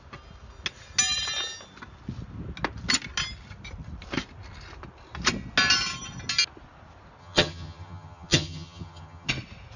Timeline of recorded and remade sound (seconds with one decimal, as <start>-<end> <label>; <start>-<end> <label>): 0.0-7.2 recorded; 7.2-9.3 remade; 9.3-9.8 recorded